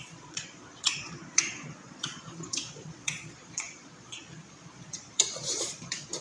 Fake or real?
fake